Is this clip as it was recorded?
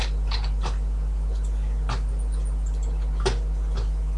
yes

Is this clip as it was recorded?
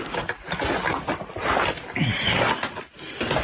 yes